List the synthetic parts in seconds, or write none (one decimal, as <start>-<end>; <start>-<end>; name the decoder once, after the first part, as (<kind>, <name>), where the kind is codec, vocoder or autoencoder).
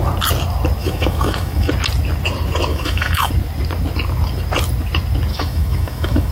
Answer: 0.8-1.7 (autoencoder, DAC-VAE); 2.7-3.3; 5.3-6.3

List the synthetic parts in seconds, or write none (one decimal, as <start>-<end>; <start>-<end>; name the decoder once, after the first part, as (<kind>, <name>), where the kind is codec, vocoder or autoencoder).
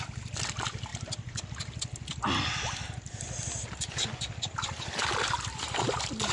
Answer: 0.0-5.0 (vocoder, BigVGAN v2); 5.6-6.3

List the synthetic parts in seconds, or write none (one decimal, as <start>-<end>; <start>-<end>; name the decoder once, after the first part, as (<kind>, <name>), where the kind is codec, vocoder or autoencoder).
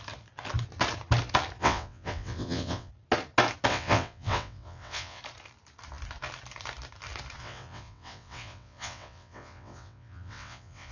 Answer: 1.6-2.9 (vocoder, WaveNeXt); 3.7-5.2; 7.4-10.9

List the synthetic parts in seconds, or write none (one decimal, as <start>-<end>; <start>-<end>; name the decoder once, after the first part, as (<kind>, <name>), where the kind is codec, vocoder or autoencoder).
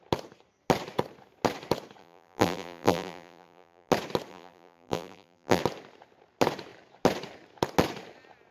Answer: 2.0-3.9 (vocoder, BigVGAN v2); 4.3-5.6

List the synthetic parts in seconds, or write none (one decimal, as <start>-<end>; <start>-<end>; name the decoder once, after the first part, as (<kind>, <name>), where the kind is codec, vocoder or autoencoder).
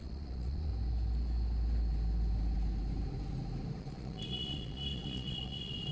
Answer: 0.0-0.7 (vocoder, Vocos); 3.8-5.9